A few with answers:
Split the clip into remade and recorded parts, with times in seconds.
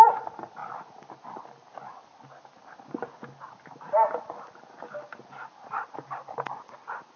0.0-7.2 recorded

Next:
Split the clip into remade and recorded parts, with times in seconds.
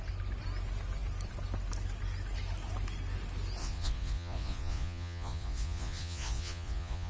0.0-3.6 recorded; 3.6-7.1 remade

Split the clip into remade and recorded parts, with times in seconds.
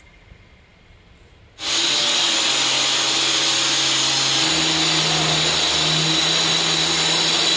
0.0-7.6 recorded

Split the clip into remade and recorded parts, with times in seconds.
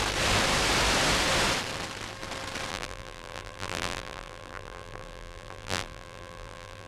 0.0-2.7 recorded; 2.7-6.9 remade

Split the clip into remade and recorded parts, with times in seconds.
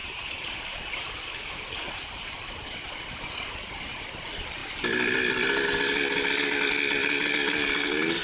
0.0-0.9 remade; 0.9-8.2 recorded